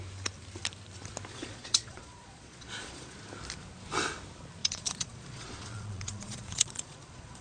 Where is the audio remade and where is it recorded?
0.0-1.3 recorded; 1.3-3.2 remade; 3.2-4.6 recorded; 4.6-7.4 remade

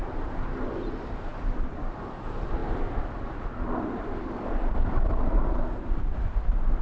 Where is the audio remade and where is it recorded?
0.0-6.8 recorded

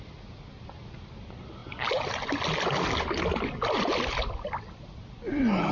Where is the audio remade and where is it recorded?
0.0-5.7 recorded

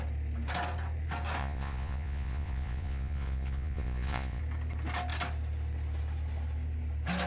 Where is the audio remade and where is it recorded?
0.0-1.4 recorded; 1.4-4.4 remade; 4.4-7.3 recorded

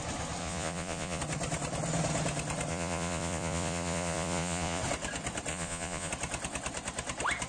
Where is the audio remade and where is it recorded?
0.0-0.4 recorded; 0.4-1.2 remade; 1.2-2.7 recorded; 2.7-4.8 remade; 4.8-5.5 recorded; 5.5-6.1 remade; 6.1-7.5 recorded